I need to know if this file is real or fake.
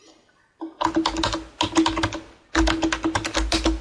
real